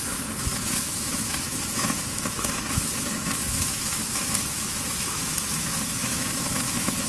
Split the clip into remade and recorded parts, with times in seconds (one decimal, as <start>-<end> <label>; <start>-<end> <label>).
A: 0.0-7.1 remade